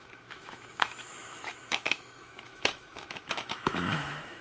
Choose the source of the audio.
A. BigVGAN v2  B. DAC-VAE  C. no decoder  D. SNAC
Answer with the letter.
B